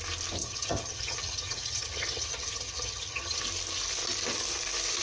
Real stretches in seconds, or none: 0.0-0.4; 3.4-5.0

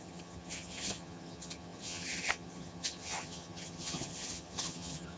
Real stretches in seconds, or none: none